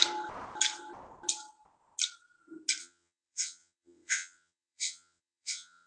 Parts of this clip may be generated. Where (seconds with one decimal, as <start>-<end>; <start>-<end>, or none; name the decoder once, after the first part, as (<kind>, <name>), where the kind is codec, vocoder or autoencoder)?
2.8-5.9 (vocoder, WaveNeXt)